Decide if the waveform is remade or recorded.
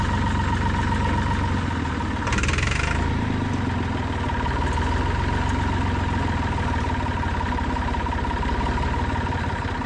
recorded